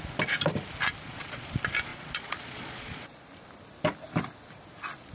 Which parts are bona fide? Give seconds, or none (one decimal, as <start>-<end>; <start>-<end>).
0.0-1.0; 1.5-1.9; 3.3-5.1